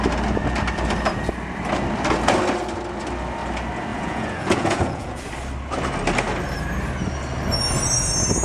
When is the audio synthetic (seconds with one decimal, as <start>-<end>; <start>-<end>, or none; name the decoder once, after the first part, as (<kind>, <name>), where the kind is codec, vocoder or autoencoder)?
3.9-5.2 (vocoder, Vocos)

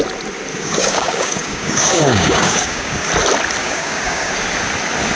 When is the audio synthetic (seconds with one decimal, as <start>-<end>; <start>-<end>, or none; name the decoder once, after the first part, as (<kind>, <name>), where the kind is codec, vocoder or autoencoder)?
0.5-3.1 (codec, DAC); 3.6-4.3